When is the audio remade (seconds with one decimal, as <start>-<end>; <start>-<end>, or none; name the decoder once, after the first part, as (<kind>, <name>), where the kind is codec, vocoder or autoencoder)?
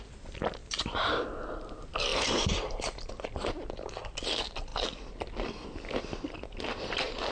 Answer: 0.6-1.2 (vocoder, BigVGAN v2); 2.1-3.1